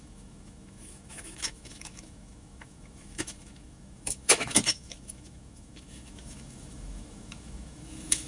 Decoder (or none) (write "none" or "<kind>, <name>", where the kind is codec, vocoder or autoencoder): autoencoder, DAC-VAE